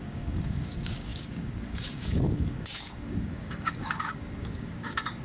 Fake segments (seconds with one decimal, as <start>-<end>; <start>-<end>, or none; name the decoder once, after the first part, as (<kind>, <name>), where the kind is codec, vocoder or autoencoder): 0.0-5.2 (codec, DAC)